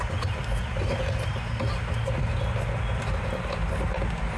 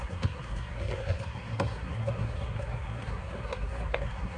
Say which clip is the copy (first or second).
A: second